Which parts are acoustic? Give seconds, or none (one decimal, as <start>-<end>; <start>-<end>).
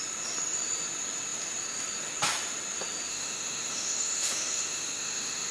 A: 0.0-3.1